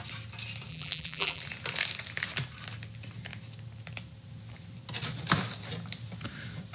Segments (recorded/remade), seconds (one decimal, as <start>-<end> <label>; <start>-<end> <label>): 0.0-0.7 recorded; 0.7-1.4 remade; 1.4-6.7 recorded